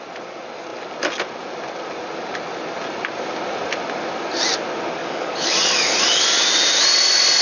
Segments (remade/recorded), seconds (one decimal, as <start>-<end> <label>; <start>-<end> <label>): 0.0-5.0 recorded; 5.0-6.2 remade; 6.2-7.4 recorded